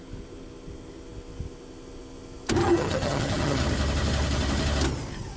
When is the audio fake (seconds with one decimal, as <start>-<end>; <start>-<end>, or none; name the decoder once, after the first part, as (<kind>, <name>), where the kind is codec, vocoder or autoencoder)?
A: 2.6-3.6 (vocoder, HiFi-GAN)